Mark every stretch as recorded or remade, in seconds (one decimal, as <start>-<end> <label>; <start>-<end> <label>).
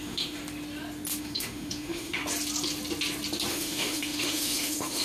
0.0-0.4 remade; 0.4-1.2 recorded; 1.2-2.2 remade; 2.2-3.5 recorded; 3.5-5.0 remade